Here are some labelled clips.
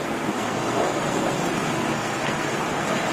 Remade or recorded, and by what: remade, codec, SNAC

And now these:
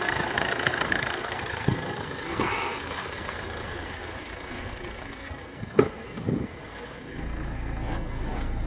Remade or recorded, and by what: remade, codec, SNAC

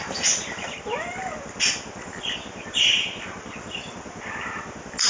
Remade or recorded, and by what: recorded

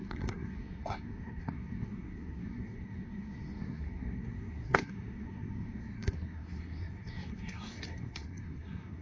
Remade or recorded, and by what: remade, codec, SNAC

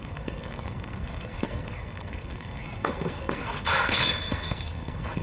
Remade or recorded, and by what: remade, codec, SNAC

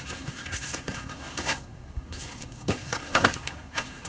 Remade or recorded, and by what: remade, codec, SNAC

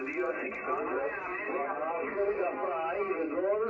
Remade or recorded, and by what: recorded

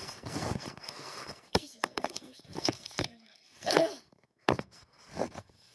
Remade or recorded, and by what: remade, codec, SNAC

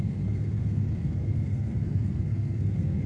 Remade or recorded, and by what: remade, codec, SNAC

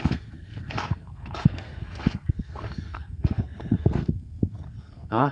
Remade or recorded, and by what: remade, codec, SNAC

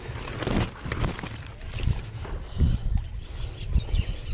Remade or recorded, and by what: recorded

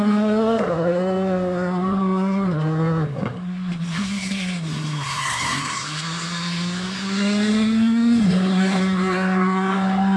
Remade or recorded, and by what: remade, codec, SNAC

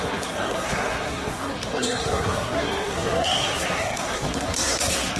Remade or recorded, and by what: remade, codec, SNAC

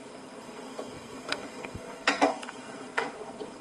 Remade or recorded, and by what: remade, codec, SNAC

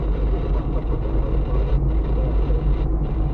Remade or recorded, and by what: recorded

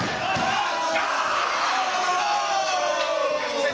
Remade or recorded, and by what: recorded